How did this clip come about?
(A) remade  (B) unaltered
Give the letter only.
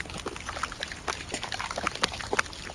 B